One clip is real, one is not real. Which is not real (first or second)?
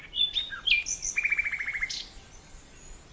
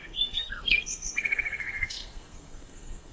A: second